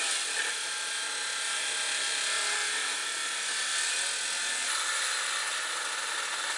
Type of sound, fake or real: real